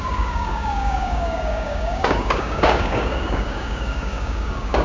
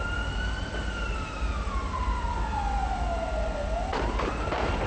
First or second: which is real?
second